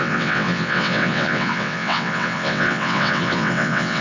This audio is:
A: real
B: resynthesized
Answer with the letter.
B